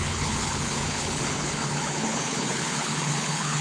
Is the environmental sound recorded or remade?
remade